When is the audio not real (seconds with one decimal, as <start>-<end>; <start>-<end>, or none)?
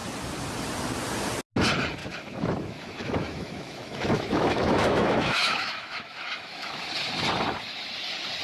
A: 2.0-6.8